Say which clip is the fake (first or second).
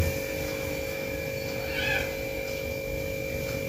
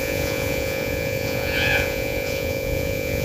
second